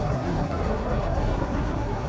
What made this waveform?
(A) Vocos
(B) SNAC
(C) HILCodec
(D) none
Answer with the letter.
B